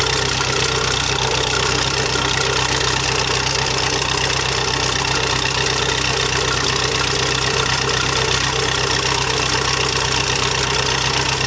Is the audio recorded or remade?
recorded